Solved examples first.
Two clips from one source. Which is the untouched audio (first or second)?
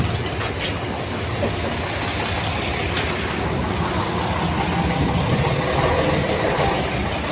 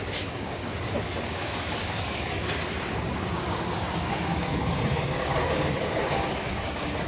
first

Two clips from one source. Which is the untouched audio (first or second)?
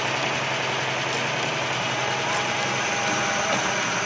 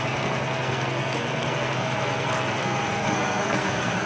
first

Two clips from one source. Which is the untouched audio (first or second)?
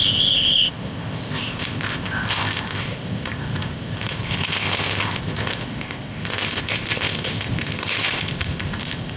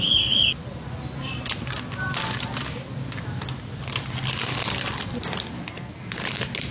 second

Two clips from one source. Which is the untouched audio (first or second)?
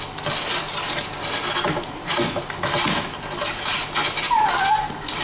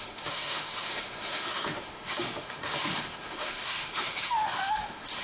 first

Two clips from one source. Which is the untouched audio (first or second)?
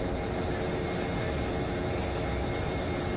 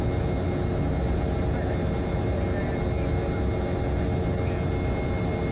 second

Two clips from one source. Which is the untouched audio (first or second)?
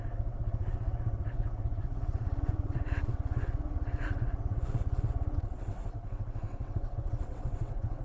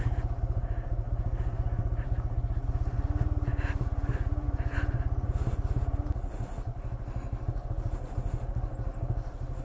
second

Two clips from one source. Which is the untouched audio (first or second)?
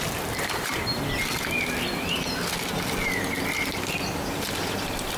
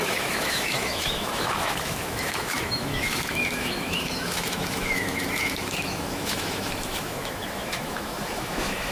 first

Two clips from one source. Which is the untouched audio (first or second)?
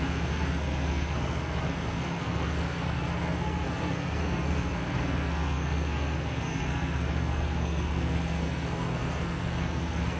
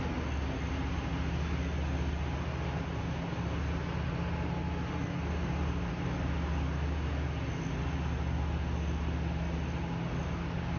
second